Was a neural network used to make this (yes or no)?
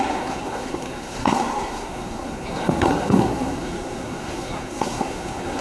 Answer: yes